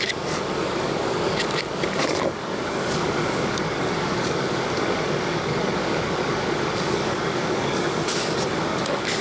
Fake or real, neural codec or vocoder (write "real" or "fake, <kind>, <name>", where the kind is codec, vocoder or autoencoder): fake, codec, DAC